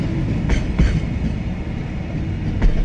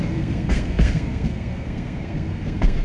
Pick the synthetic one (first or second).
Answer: second